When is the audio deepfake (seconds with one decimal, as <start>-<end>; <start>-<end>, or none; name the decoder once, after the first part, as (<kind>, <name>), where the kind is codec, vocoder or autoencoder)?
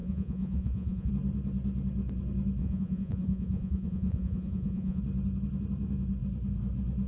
0.0-1.1 (vocoder, Vocos); 2.6-5.0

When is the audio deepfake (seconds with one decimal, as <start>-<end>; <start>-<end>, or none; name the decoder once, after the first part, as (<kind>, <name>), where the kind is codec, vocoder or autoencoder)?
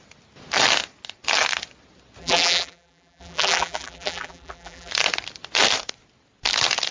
2.2-4.9 (vocoder, BigVGAN v2)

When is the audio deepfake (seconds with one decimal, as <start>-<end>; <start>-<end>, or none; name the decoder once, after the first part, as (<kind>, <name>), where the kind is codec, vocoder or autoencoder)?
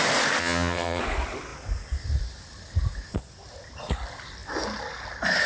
0.4-1.0 (vocoder, HiFi-GAN)